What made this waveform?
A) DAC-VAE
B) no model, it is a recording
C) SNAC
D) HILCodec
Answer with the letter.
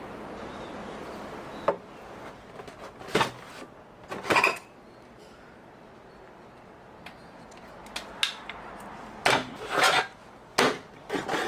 B